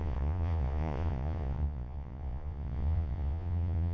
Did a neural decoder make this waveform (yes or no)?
yes